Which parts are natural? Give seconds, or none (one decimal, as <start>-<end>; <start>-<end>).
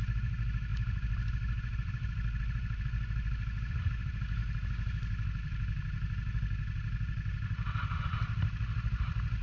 0.0-9.4